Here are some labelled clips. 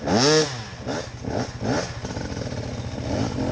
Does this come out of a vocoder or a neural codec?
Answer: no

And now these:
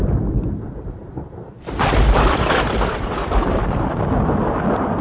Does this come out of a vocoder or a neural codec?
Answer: yes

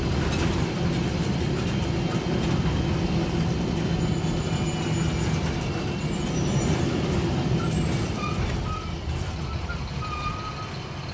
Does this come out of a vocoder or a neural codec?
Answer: no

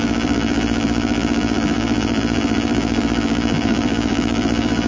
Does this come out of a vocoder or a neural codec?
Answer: yes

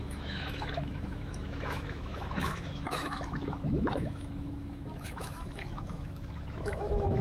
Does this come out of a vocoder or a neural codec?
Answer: yes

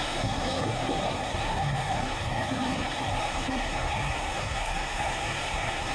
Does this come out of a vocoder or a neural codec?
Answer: yes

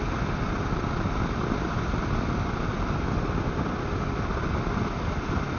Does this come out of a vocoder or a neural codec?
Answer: no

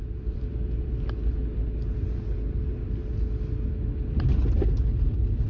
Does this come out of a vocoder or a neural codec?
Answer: no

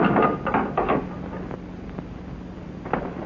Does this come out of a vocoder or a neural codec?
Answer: no